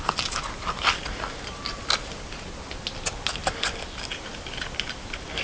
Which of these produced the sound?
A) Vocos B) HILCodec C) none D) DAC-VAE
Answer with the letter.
C